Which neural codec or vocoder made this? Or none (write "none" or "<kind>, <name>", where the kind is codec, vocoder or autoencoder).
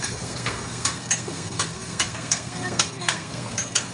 codec, SNAC